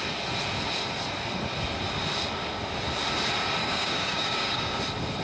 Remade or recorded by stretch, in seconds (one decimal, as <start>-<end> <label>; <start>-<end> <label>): 0.0-3.6 recorded; 3.6-4.8 remade; 4.8-5.2 recorded